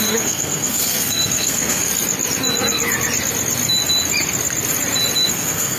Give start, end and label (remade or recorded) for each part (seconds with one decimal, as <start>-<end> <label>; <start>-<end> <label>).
0.0-1.9 remade; 1.9-5.3 recorded; 5.3-5.8 remade